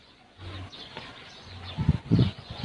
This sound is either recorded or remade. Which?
remade